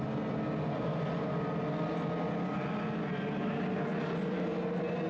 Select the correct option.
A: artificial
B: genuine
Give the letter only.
B